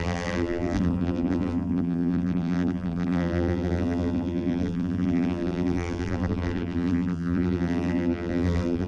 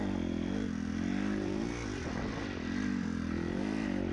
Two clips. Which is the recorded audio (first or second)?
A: second